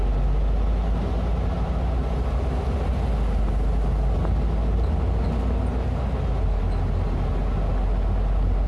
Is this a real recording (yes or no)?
yes